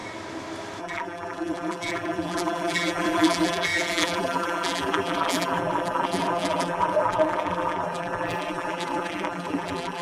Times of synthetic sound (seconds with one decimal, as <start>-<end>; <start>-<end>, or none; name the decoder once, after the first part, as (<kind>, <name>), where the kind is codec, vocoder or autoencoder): 0.8-10.0 (vocoder, BigVGAN v2)